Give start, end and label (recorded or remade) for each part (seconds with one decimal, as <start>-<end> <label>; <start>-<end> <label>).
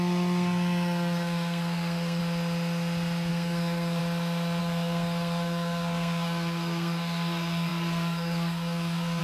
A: 0.0-2.2 remade; 2.2-3.3 recorded; 3.3-4.0 remade; 4.0-4.6 recorded; 4.6-9.2 remade